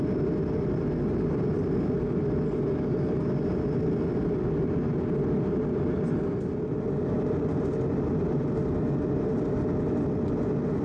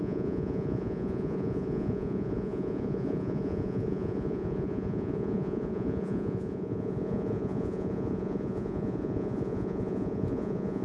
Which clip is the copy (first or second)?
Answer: second